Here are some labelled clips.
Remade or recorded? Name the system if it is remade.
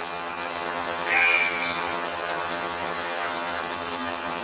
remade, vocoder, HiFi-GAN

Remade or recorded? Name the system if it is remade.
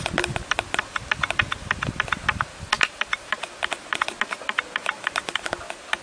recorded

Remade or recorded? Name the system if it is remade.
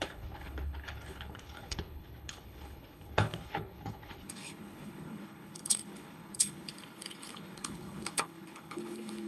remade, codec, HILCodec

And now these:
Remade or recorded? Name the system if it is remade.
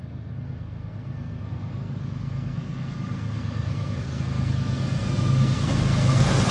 remade, codec, SNAC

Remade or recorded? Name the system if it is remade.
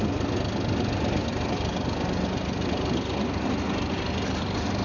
recorded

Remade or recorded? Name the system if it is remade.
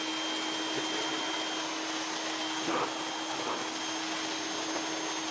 recorded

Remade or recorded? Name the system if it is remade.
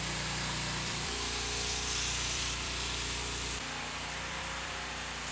remade, vocoder, BigVGAN v2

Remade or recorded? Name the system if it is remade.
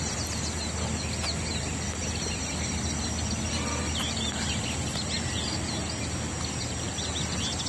recorded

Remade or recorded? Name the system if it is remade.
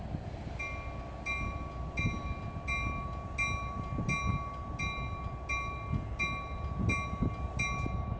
recorded